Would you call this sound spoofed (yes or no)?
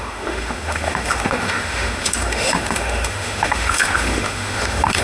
yes